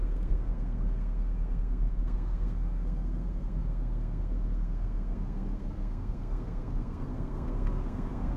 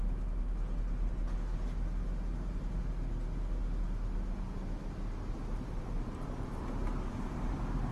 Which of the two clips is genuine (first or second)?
second